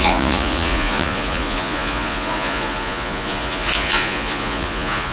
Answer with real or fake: fake